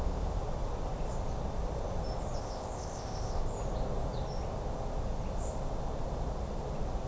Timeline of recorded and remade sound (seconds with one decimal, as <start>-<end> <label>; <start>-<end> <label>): 0.0-0.4 remade; 0.4-2.4 recorded; 2.4-3.4 remade; 3.4-7.1 recorded